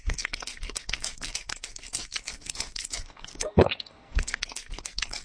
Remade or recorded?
remade